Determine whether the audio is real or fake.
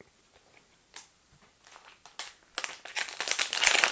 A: real